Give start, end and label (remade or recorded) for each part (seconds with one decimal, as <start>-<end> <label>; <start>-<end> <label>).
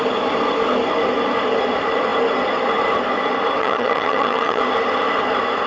0.0-3.6 recorded; 3.6-4.6 remade; 4.6-5.7 recorded